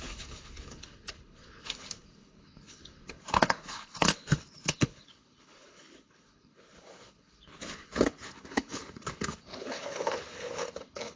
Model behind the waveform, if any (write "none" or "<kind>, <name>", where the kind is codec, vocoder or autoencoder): codec, HILCodec